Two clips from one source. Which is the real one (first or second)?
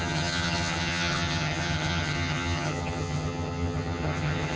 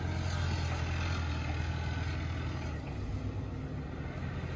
second